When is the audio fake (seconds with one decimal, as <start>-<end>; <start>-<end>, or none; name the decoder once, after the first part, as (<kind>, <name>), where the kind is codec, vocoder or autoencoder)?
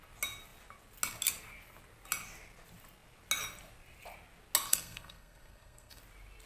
4.7-6.0 (codec, SNAC)